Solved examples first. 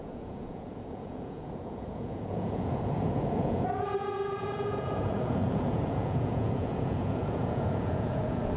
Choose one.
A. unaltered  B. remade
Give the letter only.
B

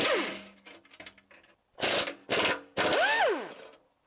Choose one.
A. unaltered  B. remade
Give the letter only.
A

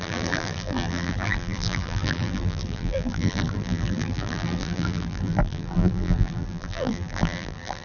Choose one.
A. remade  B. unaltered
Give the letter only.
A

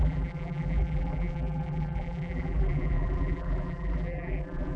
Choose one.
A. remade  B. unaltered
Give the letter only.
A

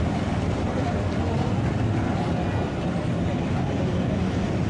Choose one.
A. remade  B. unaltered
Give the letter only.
B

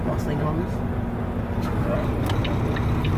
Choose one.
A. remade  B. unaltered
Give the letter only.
B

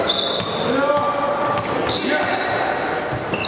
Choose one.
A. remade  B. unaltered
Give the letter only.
B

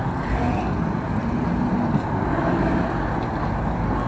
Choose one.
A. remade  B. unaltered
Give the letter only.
B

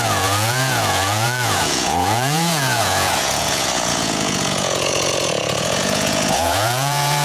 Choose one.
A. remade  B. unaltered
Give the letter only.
A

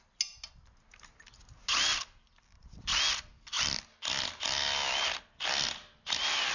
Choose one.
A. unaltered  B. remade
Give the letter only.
A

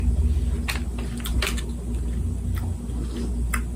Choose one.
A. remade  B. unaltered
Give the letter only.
B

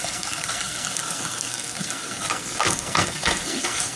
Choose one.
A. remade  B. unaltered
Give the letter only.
A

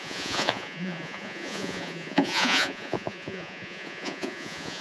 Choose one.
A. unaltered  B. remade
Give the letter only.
B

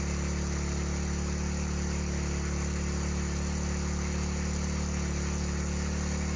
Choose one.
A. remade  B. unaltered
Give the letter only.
B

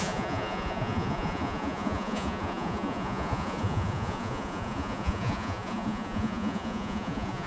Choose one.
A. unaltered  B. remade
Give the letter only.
B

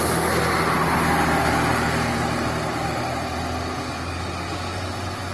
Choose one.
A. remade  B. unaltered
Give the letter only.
B